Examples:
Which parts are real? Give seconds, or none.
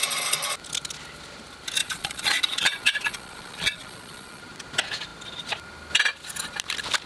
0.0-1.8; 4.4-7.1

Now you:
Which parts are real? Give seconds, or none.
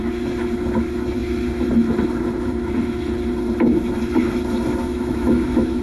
0.0-4.9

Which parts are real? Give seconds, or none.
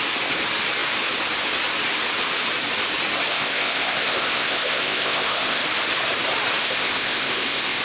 0.0-3.3; 5.6-6.6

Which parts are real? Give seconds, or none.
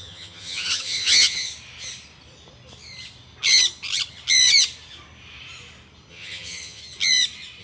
1.5-6.1; 6.8-7.6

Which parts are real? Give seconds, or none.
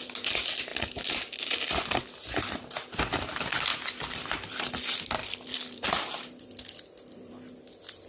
0.0-3.7; 4.7-5.2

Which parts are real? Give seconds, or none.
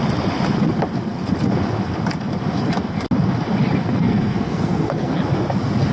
0.0-3.8; 5.2-5.9